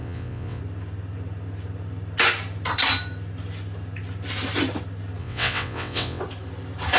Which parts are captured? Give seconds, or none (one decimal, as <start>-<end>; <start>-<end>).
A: 0.6-5.2; 6.2-7.0